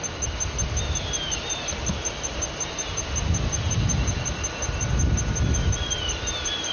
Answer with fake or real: fake